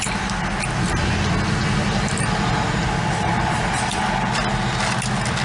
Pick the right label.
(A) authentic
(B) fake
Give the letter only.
A